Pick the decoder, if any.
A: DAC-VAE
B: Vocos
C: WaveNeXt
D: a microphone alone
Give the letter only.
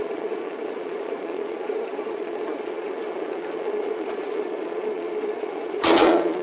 B